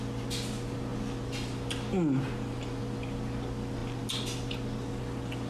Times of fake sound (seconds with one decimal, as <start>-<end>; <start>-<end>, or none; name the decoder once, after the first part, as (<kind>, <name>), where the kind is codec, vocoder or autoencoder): none